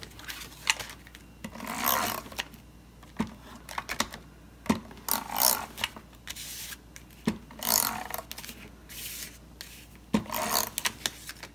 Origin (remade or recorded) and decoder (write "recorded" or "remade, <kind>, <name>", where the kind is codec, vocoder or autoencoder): recorded